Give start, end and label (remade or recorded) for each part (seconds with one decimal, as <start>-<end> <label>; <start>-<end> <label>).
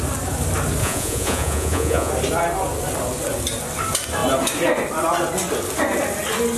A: 0.0-0.8 recorded; 0.8-2.1 remade; 2.1-6.6 recorded